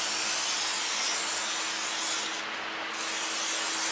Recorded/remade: recorded